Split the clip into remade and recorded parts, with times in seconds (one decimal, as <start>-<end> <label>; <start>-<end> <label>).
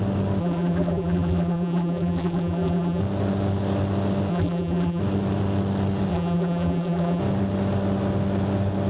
0.0-0.4 recorded; 0.4-3.0 remade; 3.0-4.3 recorded; 4.3-5.0 remade; 5.0-6.1 recorded; 6.1-7.2 remade; 7.2-8.9 recorded